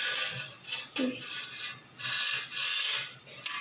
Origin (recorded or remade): recorded